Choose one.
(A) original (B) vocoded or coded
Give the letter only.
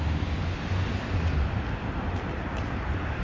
A